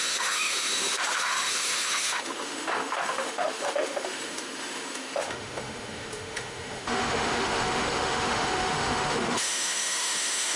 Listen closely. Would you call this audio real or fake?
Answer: fake